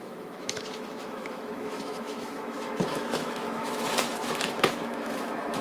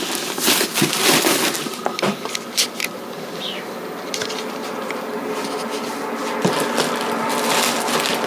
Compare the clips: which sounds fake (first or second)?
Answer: first